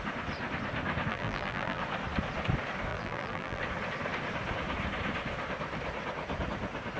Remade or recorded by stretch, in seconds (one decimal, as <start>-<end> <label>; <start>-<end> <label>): 0.0-1.1 recorded; 1.1-1.8 remade; 1.8-2.9 recorded; 2.9-3.6 remade; 3.6-7.0 recorded